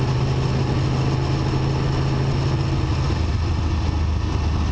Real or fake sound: real